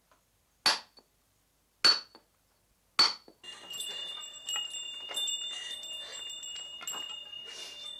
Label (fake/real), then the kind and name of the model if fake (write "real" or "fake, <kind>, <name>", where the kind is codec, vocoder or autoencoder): real